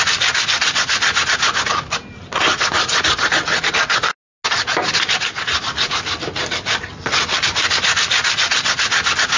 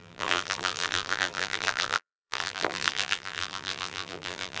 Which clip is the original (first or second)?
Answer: first